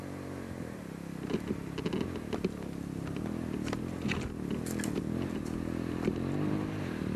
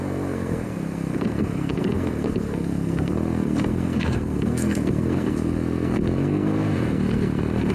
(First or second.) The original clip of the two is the first